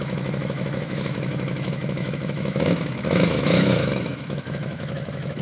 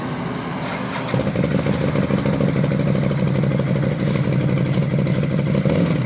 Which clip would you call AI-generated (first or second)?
first